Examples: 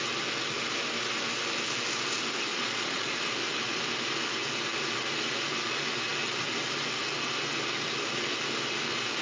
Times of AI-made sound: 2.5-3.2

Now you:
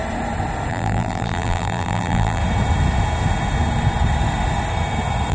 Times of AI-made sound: 0.7-2.4

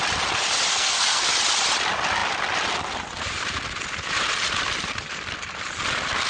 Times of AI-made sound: 0.7-1.3

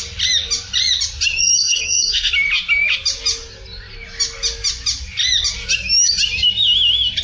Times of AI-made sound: 1.4-2.3

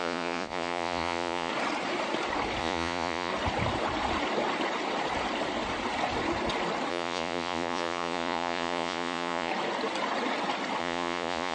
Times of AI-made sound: 0.0-1.5; 2.6-3.3; 6.9-9.5; 10.8-11.5